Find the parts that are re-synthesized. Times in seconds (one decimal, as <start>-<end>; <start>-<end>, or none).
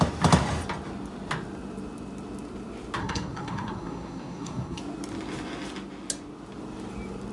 3.0-4.8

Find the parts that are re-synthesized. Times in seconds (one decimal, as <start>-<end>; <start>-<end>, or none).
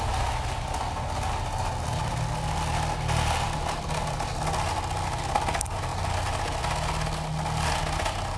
none